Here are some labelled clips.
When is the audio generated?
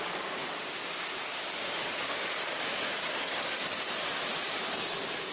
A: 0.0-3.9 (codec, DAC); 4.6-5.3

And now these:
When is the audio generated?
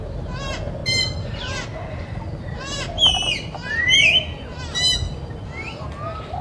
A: none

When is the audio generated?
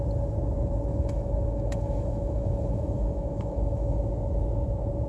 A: 0.9-4.0 (autoencoder, DAC-VAE)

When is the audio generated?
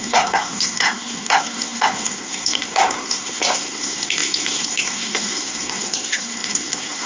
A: 0.0-7.1 (codec, SNAC)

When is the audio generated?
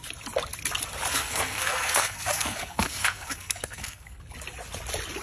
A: 1.1-4.2 (codec, SNAC)